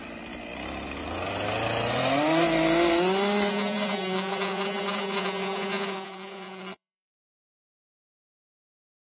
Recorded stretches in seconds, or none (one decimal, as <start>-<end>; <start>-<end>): 0.0-3.5; 7.6-9.0